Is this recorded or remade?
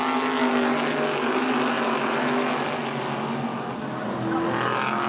recorded